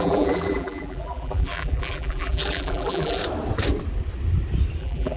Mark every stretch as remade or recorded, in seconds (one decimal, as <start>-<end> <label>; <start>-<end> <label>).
0.0-3.2 remade; 3.2-4.8 recorded; 4.8-5.2 remade